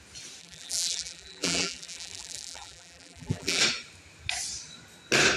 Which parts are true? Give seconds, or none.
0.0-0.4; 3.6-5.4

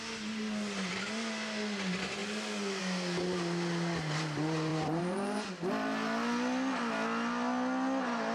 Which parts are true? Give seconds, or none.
0.0-4.7; 5.5-8.3

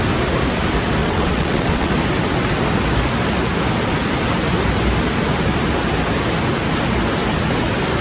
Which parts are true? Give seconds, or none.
0.0-1.0; 1.9-8.0